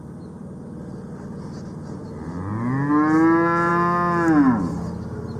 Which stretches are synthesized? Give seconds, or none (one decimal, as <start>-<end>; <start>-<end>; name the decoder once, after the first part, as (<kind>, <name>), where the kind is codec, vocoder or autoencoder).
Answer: none